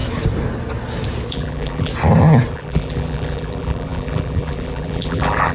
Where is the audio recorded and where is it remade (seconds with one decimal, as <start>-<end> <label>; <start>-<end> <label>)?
0.0-1.3 recorded; 1.3-1.9 remade; 1.9-2.5 recorded; 2.5-5.5 remade